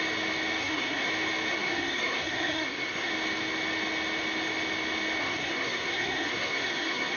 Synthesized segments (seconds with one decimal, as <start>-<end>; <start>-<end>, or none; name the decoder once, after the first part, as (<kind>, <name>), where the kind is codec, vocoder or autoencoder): 0.6-1.1 (codec, SNAC); 1.5-3.1; 5.2-7.2